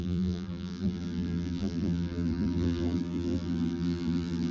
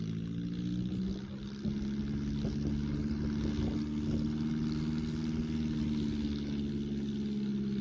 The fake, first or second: first